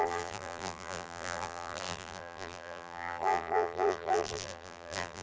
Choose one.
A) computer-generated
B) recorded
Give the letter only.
A